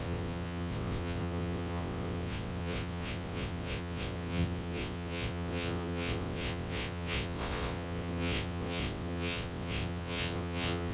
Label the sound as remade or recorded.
remade